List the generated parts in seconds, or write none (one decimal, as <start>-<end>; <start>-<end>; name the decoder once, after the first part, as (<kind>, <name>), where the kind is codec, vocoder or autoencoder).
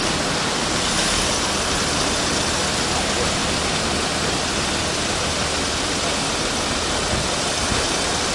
none